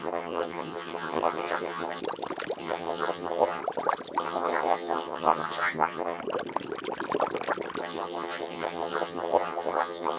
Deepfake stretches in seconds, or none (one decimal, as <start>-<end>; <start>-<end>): 0.0-2.0; 2.6-3.6; 4.2-6.2; 7.8-10.2